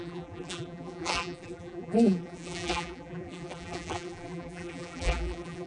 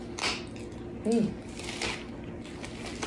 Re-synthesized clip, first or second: first